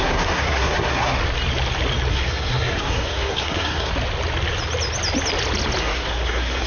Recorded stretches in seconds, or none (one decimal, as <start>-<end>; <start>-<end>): 1.2-2.1; 3.9-5.8